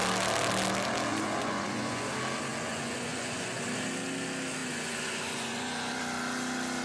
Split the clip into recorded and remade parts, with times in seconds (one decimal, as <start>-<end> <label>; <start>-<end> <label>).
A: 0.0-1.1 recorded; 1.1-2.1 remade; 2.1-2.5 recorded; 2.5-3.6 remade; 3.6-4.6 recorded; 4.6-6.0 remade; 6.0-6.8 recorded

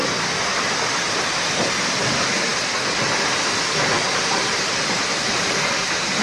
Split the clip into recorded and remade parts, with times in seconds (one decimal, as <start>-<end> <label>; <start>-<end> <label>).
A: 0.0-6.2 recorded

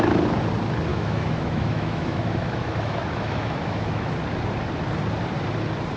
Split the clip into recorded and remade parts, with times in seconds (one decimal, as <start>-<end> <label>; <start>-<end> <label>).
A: 0.0-0.9 recorded; 0.9-4.1 remade; 4.1-6.0 recorded

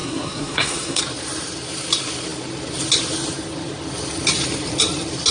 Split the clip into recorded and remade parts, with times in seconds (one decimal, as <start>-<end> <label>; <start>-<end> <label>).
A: 0.0-1.0 remade; 1.0-5.3 recorded

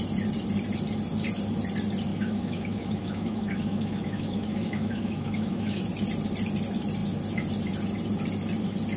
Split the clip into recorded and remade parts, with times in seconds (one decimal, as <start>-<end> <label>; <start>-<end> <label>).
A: 0.0-2.1 recorded; 2.1-5.8 remade; 5.8-9.0 recorded

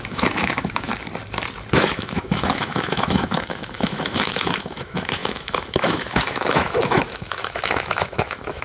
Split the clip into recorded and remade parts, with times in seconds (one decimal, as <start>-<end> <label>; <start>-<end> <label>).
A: 0.0-0.9 remade; 0.9-1.7 recorded; 1.7-8.6 remade

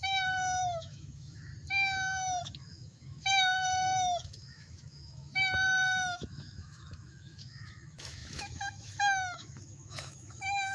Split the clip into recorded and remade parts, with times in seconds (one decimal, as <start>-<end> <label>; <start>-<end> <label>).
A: 0.0-1.5 remade; 1.5-2.4 recorded; 2.4-10.7 remade

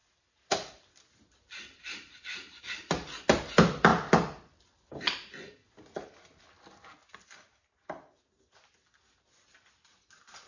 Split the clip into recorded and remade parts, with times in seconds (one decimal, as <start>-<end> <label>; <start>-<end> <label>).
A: 0.0-10.5 recorded